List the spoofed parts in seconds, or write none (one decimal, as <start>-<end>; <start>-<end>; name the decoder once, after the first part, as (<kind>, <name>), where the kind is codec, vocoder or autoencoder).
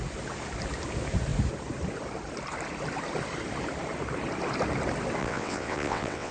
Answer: 5.2-6.3 (vocoder, WaveNeXt)